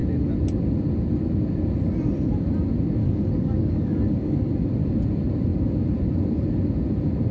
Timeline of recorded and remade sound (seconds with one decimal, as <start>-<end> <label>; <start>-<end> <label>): 0.0-3.0 recorded; 3.0-4.5 remade; 4.5-7.3 recorded